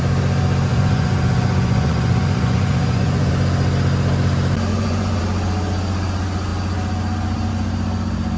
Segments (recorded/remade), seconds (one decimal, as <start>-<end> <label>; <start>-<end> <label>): 0.0-0.7 recorded; 0.7-3.3 remade; 3.3-4.7 recorded; 4.7-5.2 remade; 5.2-8.4 recorded